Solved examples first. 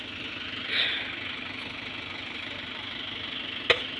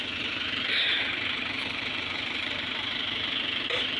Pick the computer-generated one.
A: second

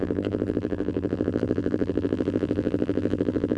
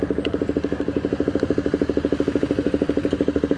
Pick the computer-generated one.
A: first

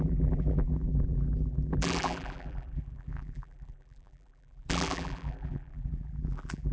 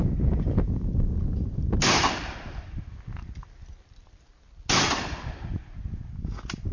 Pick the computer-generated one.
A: first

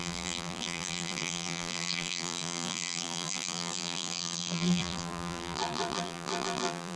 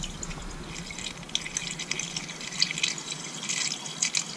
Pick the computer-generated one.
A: first